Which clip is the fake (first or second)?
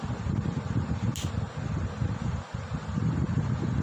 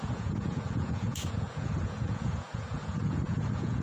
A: second